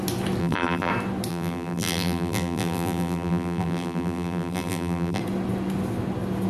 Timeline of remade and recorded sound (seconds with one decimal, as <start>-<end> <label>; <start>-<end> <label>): 0.0-0.4 recorded; 0.4-0.9 remade; 0.9-1.3 recorded; 1.3-5.2 remade; 5.2-6.5 recorded